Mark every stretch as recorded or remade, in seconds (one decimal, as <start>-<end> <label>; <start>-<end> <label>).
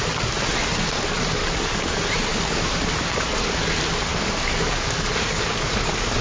0.0-1.4 recorded; 1.4-1.9 remade; 1.9-2.3 recorded; 2.3-2.8 remade; 2.8-4.1 recorded; 4.1-6.2 remade